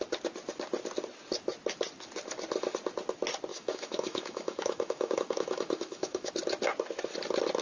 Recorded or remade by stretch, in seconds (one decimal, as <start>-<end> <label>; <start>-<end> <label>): 0.0-3.5 recorded; 3.5-6.3 remade; 6.3-7.6 recorded